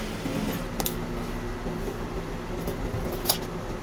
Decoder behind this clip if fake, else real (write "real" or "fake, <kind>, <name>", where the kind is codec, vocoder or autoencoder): real